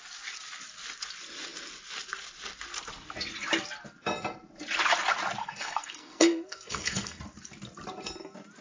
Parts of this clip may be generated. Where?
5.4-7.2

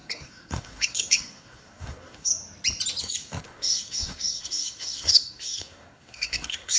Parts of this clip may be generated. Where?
0.0-2.3; 3.0-6.8

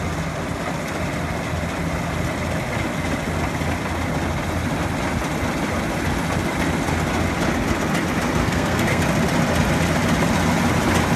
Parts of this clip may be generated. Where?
8.4-9.0

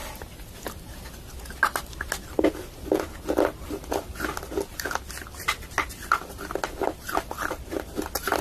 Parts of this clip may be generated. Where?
none

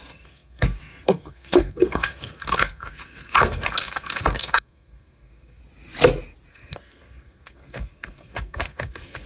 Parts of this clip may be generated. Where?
0.0-5.6; 6.5-9.3

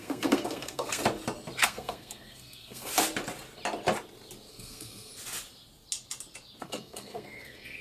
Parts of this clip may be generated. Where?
0.0-1.0; 1.6-2.9; 4.5-5.1; 6.6-7.8

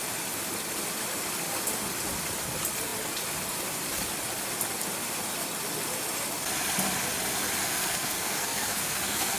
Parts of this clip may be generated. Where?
7.6-9.4